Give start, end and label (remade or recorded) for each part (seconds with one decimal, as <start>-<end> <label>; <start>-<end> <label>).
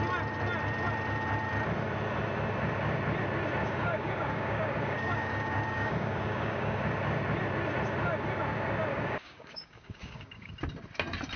0.0-3.6 recorded; 3.6-6.8 remade; 6.8-8.9 recorded; 8.9-10.5 remade; 10.5-11.4 recorded